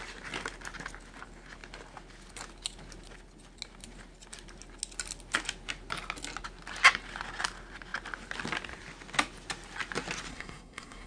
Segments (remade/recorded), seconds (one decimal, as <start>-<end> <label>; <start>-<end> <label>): 0.0-10.3 recorded; 10.3-11.1 remade